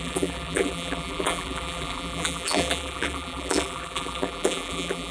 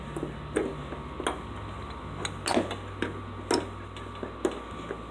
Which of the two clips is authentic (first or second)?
second